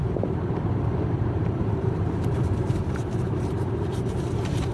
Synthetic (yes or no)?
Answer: yes